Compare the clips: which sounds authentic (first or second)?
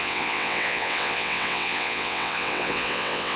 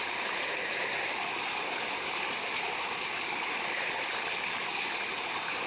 second